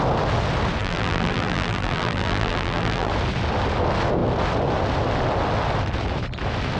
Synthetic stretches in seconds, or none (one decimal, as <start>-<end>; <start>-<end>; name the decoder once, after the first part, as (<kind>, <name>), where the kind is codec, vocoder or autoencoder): 0.8-3.1 (vocoder, BigVGAN v2)